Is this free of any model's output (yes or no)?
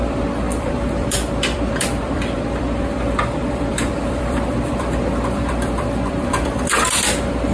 no